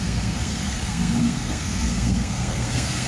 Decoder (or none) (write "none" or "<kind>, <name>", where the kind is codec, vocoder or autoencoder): codec, SNAC